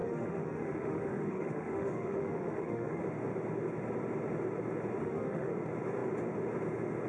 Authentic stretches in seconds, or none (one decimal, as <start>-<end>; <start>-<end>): 3.0-5.0; 5.5-7.1